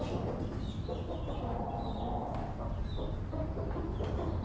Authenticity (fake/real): real